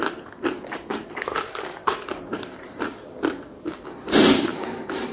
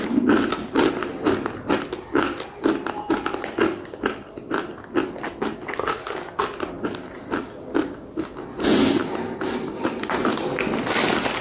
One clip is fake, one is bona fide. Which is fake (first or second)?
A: first